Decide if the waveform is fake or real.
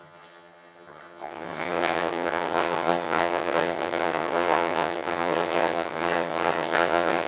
fake